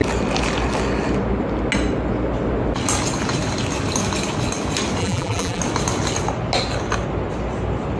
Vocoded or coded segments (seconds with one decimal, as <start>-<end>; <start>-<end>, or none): 5.0-5.6